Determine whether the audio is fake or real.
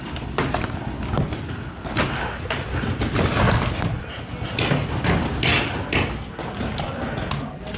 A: real